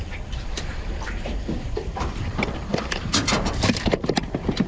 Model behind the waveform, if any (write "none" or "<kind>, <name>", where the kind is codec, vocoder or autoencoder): vocoder, BigVGAN v2